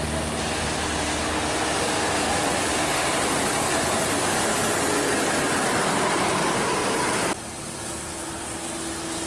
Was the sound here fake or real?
real